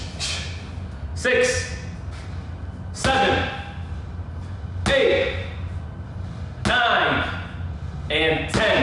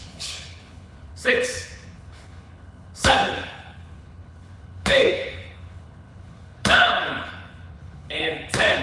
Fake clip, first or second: second